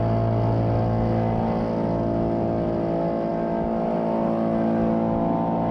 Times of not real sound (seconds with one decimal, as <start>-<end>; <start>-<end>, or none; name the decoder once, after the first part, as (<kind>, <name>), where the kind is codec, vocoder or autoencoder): none